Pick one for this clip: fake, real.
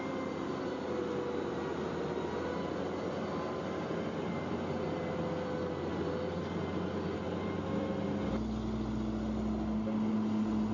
real